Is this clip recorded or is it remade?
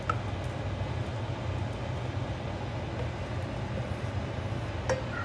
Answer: recorded